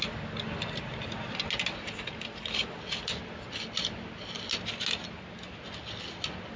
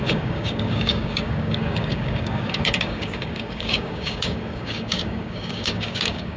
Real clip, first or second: first